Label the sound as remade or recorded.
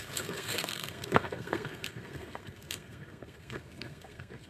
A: remade